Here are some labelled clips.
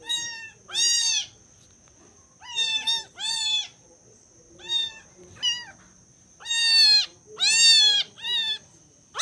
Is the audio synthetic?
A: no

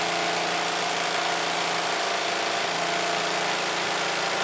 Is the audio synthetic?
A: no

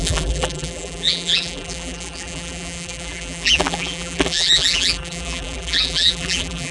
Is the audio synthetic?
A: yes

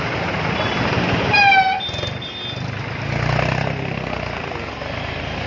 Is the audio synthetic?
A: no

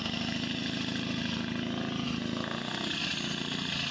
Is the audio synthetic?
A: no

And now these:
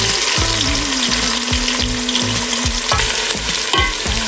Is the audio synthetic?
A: no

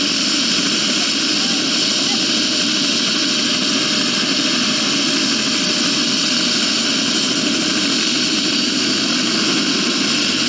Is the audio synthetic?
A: no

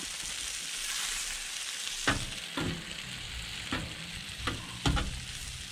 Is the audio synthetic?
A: no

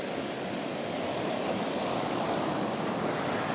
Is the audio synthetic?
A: yes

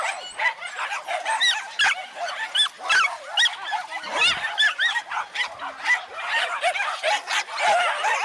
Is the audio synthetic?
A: no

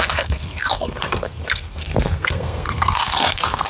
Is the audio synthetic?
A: yes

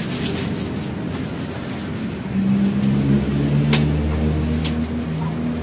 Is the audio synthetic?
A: no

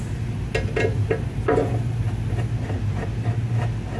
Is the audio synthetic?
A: no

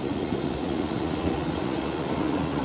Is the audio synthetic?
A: yes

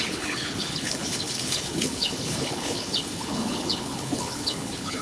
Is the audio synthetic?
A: yes